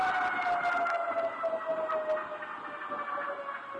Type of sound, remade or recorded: recorded